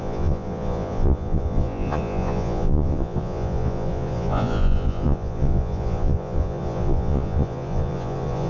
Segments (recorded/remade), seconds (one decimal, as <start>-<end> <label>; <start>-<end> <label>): 0.0-8.5 remade